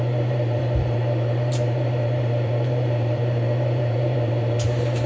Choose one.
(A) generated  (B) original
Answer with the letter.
A